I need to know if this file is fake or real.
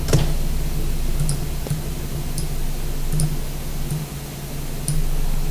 real